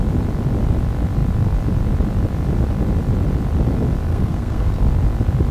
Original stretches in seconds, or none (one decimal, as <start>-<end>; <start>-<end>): 0.0-4.1; 4.8-5.5